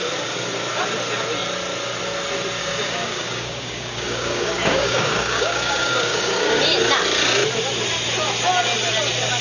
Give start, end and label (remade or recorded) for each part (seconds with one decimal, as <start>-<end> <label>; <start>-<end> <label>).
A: 0.0-2.6 recorded; 2.6-6.6 remade; 6.6-9.4 recorded